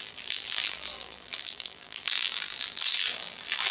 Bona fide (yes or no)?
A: no